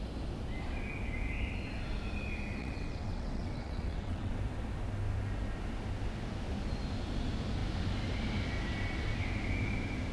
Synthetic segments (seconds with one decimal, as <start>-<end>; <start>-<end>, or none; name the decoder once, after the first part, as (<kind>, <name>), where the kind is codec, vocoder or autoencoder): 2.6-4.3 (vocoder, WaveNeXt)